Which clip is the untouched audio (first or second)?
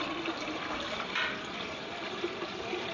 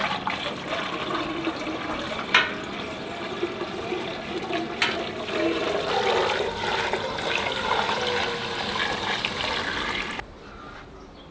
second